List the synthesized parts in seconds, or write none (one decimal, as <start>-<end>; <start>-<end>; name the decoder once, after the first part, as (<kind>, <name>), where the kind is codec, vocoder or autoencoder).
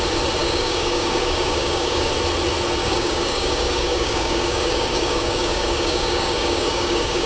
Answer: 0.4-2.1 (codec, DAC); 2.8-7.3